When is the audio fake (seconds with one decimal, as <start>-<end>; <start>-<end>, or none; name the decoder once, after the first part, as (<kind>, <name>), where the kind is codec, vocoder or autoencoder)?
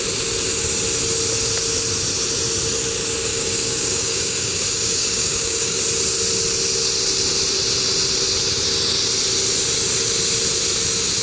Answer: 3.3-5.8 (codec, DAC)